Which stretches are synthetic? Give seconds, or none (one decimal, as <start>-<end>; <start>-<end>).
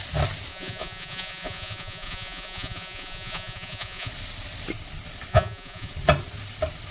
0.5-4.1; 5.3-5.9